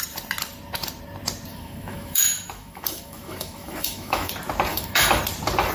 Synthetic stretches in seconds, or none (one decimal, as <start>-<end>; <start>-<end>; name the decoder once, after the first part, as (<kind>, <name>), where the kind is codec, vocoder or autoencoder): 1.5-4.3 (autoencoder, DAC-VAE); 4.7-5.2